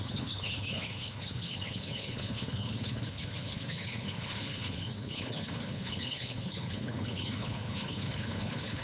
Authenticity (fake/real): fake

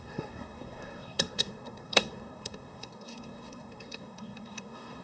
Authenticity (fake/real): fake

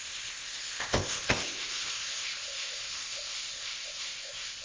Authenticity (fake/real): fake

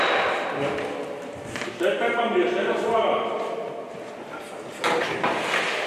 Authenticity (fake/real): real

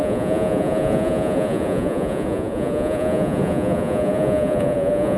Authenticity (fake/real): fake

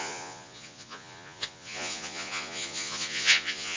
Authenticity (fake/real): fake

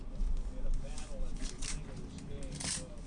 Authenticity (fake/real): real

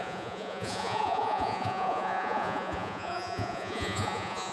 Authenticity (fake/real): fake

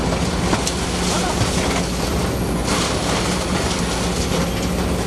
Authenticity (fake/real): real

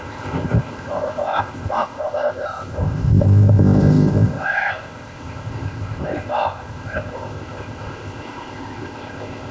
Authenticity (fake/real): fake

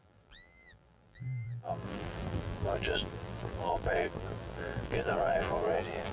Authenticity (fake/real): fake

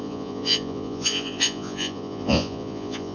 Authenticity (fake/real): fake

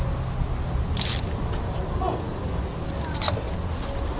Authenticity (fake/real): real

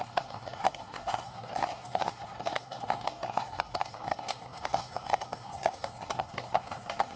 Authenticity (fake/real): fake